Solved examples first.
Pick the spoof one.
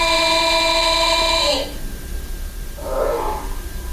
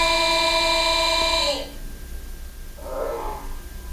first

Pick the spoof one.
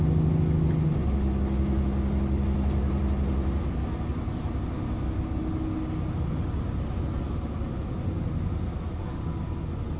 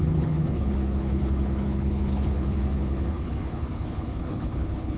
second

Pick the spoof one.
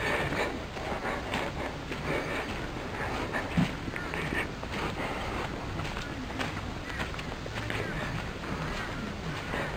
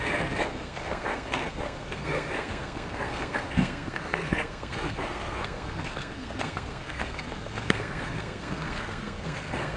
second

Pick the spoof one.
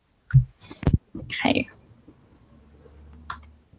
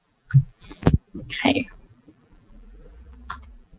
second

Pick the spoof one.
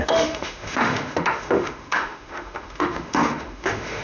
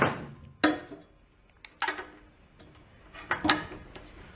first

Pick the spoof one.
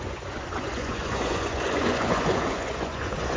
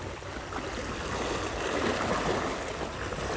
first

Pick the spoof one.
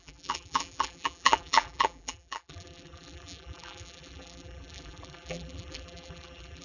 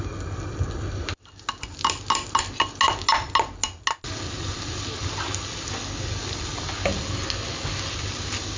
first